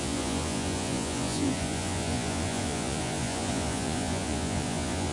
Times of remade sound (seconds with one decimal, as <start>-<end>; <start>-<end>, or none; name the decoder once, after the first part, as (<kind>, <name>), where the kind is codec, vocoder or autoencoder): 0.0-5.1 (vocoder, Vocos)